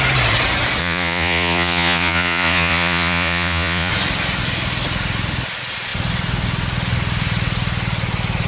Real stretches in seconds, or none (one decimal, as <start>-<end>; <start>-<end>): 0.0-0.8; 3.9-8.5